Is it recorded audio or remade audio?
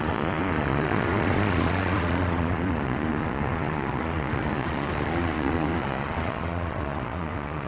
remade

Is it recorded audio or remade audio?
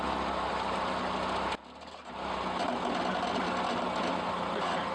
recorded